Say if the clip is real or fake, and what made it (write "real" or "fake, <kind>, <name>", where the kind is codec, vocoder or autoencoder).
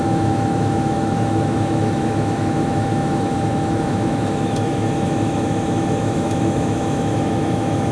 fake, autoencoder, DAC-VAE